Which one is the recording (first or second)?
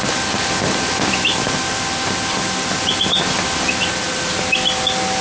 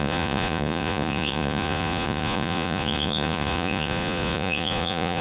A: first